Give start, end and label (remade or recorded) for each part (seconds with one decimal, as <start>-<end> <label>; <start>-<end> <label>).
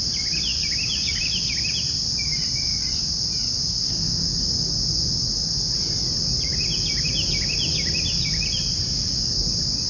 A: 0.0-9.9 recorded